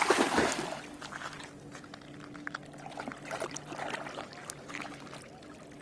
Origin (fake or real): real